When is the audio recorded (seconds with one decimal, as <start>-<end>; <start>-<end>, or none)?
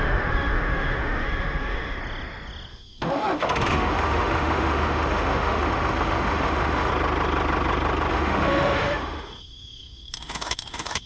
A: 2.0-2.7; 6.9-8.1